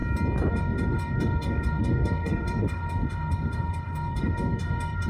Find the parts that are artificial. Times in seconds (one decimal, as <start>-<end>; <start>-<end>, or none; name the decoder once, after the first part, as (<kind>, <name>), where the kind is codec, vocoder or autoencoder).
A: 0.5-5.1 (autoencoder, DAC-VAE)